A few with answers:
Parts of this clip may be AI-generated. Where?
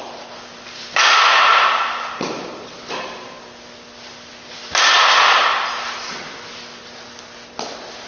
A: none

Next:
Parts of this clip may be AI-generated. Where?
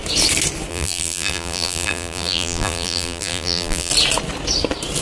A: 0.7-3.9 (vocoder, BigVGAN v2)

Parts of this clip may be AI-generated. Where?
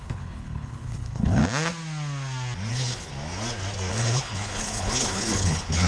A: 0.0-1.4 (codec, HILCodec); 2.7-3.1; 3.9-5.9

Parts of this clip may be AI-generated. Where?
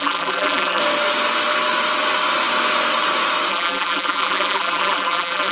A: 0.0-0.8 (vocoder, BigVGAN v2); 3.5-5.5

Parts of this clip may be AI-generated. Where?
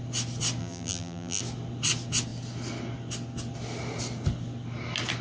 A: 0.6-1.4 (vocoder, BigVGAN v2)